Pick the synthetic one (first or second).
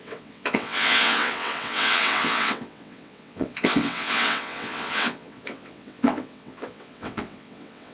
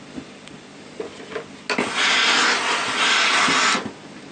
first